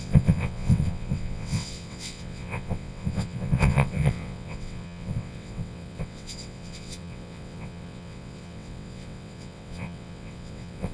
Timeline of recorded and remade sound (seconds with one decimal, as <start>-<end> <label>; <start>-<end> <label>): 0.0-10.9 remade